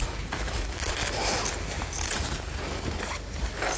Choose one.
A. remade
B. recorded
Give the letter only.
B